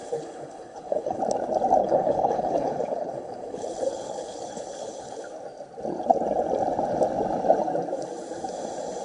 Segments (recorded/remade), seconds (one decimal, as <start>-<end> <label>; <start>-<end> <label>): 0.0-1.2 remade; 1.2-1.8 recorded; 1.8-5.2 remade; 5.2-9.0 recorded